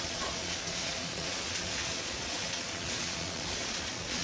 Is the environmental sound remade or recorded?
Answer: remade